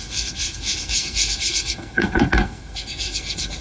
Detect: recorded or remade remade